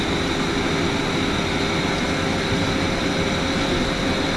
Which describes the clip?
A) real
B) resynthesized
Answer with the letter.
A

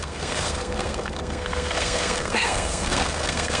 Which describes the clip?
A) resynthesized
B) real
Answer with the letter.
A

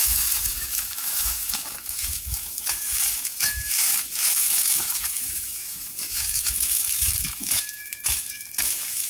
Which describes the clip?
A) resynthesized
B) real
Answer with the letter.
A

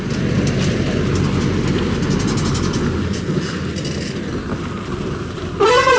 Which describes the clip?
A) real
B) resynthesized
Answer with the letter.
A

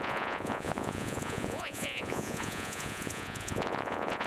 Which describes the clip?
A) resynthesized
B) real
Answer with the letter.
A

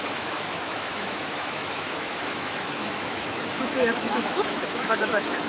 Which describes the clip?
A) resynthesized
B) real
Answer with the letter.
A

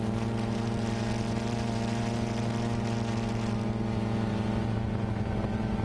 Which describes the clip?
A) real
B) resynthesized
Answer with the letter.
A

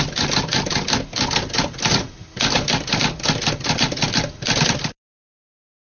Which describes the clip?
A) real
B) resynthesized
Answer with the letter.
A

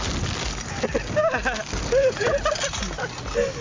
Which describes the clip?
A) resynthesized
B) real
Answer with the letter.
B